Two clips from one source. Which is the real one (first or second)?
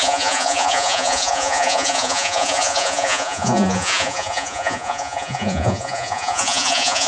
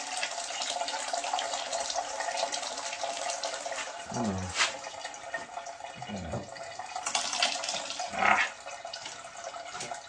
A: second